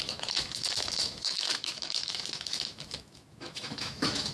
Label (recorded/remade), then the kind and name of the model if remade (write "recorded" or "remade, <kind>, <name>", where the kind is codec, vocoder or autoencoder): remade, autoencoder, DAC-VAE